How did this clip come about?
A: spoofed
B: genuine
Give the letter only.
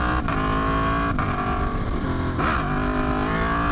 B